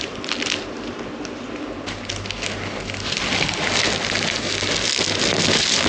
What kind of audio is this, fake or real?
real